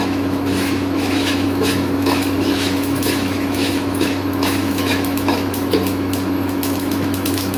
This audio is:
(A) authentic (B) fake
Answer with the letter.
B